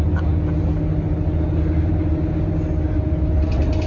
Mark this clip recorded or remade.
recorded